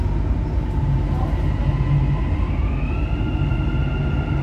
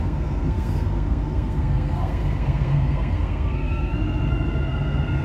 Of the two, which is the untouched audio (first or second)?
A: first